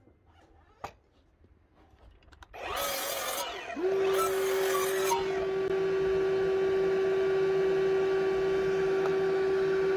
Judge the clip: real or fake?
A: real